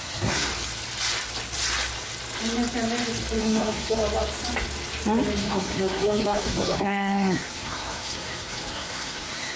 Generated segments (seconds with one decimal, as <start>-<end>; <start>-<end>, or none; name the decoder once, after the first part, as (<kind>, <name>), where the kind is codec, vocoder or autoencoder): 0.0-0.5 (codec, SNAC); 3.4-4.0; 5.4-9.6